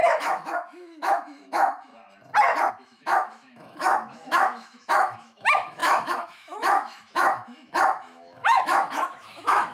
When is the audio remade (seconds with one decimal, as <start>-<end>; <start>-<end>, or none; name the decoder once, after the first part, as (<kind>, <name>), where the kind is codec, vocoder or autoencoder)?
0.0-1.9 (autoencoder, DAC-VAE); 2.7-9.7